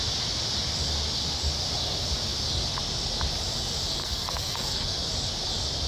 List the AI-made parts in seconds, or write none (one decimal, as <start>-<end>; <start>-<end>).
4.0-5.1

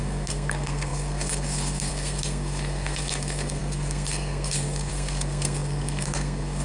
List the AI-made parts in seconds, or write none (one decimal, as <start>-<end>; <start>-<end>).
0.0-6.6

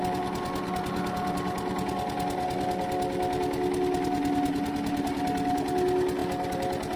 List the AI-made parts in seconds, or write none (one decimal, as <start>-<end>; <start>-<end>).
none

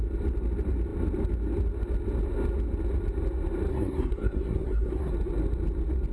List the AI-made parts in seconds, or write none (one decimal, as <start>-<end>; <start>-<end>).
3.7-5.1

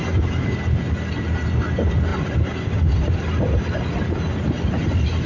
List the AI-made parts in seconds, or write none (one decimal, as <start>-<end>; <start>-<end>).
none

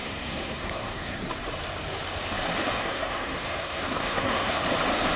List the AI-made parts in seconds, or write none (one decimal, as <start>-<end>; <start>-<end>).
0.0-1.2; 2.8-4.6

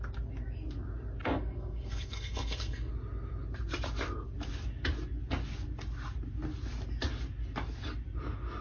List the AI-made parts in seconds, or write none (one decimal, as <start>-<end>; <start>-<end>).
1.2-2.9